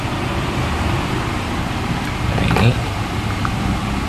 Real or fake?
fake